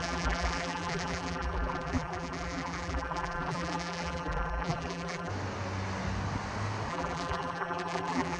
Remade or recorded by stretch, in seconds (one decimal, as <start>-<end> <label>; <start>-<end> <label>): 0.0-5.3 remade; 5.3-6.9 recorded; 6.9-8.4 remade

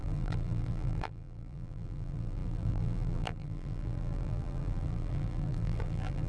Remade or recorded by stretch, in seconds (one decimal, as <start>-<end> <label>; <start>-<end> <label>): 0.0-6.3 remade

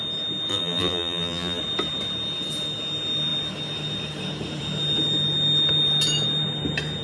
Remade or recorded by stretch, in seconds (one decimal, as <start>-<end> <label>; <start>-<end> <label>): 0.0-0.5 recorded; 0.5-1.6 remade; 1.6-7.0 recorded